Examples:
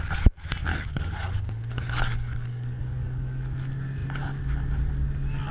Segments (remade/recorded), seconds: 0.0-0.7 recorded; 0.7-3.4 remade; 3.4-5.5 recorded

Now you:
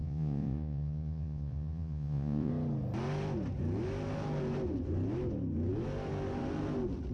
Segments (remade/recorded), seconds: 0.0-2.5 remade; 2.5-7.1 recorded